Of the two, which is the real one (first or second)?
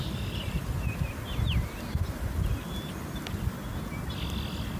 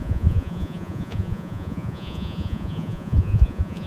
first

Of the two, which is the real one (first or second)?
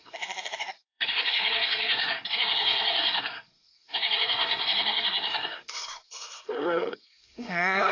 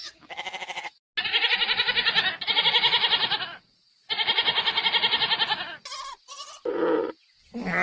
second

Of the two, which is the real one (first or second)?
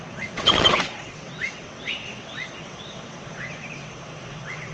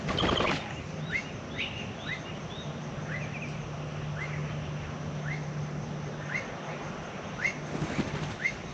second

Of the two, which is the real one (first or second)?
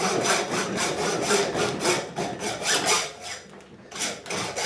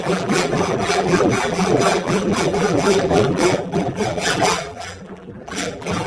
first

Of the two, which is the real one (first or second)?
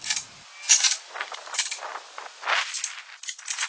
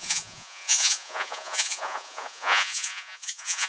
first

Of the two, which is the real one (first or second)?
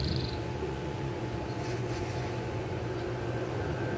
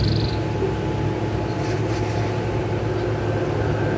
second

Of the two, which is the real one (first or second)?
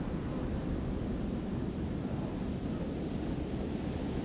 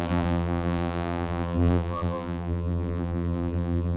first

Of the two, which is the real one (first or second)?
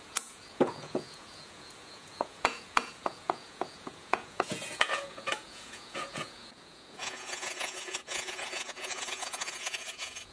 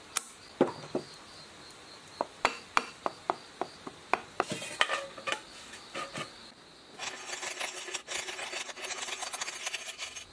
second